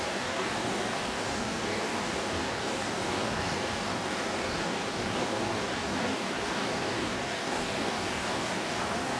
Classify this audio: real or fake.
fake